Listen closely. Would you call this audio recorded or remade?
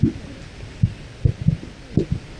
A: recorded